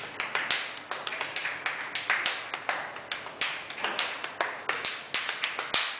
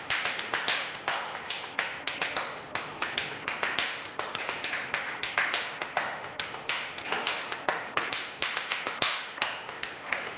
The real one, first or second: first